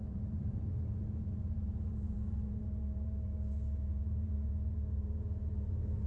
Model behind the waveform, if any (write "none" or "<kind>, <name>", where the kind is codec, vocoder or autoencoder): vocoder, BigVGAN v2